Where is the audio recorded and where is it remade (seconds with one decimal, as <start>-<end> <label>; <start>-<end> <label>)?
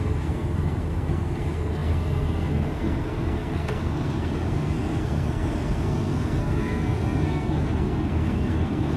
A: 0.0-9.0 remade